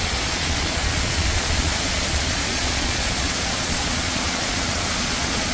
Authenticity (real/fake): fake